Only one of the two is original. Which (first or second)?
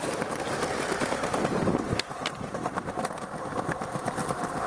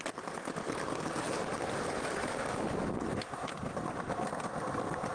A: second